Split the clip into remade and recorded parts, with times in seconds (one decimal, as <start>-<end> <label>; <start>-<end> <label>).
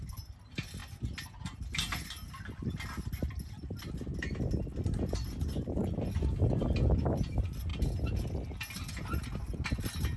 0.0-10.2 recorded